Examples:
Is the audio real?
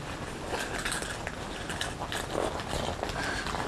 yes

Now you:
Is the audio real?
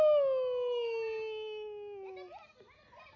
yes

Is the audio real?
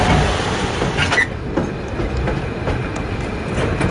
yes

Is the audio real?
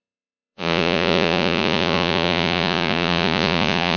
no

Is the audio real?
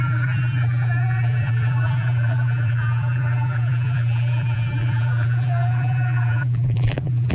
no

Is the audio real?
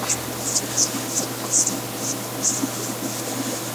yes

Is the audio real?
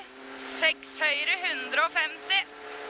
yes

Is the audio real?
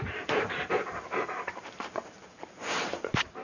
no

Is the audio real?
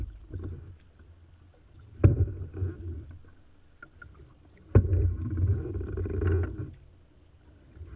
yes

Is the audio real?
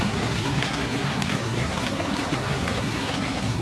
no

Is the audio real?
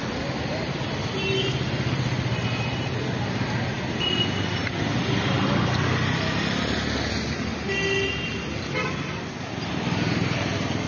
yes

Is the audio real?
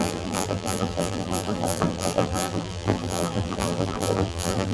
no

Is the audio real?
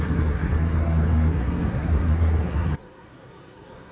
no